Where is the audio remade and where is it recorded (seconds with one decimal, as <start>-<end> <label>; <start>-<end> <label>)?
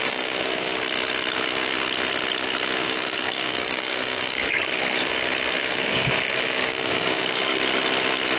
0.0-0.7 remade; 0.7-2.8 recorded; 2.8-5.1 remade; 5.1-5.6 recorded; 5.6-7.5 remade; 7.5-8.4 recorded